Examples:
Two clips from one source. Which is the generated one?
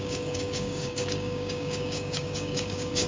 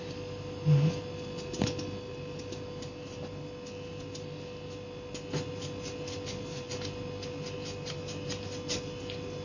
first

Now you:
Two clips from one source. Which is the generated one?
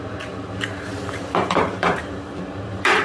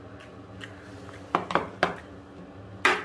first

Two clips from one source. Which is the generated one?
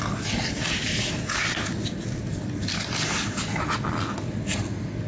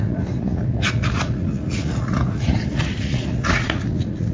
second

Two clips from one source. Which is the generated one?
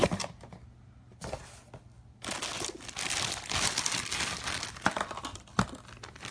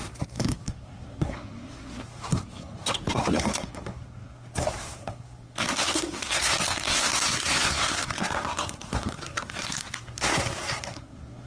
second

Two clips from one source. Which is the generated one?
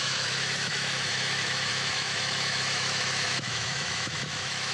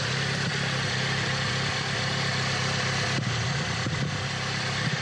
first